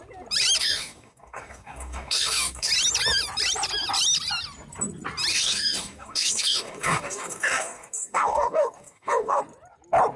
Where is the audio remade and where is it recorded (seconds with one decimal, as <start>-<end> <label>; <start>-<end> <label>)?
0.0-0.6 recorded; 0.6-2.7 remade; 2.7-5.3 recorded; 5.3-9.4 remade; 9.4-10.2 recorded